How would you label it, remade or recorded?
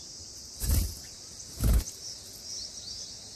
remade